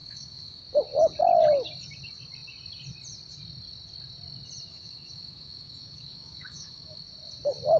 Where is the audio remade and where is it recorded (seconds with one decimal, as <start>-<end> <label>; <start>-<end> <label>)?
0.0-0.6 remade; 0.6-4.7 recorded; 4.7-7.0 remade; 7.0-7.8 recorded